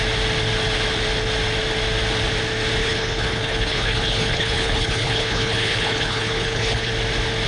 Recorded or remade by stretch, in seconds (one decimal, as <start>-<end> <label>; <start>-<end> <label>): 0.0-2.8 recorded; 2.8-6.9 remade; 6.9-7.5 recorded